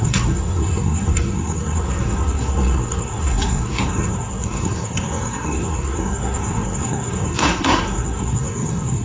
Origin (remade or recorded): remade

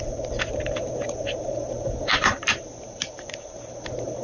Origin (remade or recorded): remade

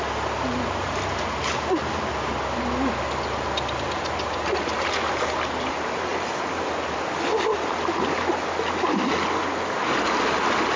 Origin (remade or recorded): recorded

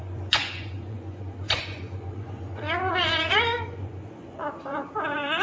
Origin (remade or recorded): remade